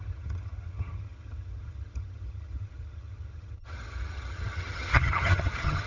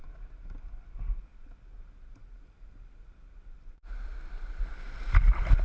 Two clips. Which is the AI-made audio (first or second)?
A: first